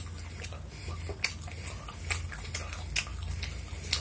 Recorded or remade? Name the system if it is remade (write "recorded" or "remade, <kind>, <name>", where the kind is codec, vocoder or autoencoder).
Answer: recorded